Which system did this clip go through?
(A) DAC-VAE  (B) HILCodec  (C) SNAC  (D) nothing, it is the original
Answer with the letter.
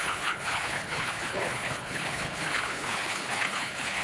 B